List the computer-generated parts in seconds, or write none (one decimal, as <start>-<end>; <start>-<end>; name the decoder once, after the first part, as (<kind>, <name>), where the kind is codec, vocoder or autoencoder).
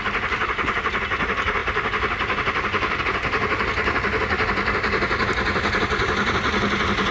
none